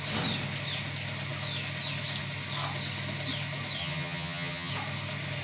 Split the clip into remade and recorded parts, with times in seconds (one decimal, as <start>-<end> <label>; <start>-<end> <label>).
0.0-3.8 recorded; 3.8-4.7 remade; 4.7-5.4 recorded